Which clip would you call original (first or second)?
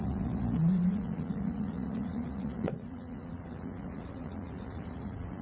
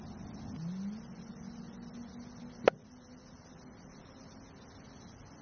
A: second